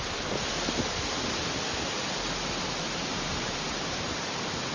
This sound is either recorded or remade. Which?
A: recorded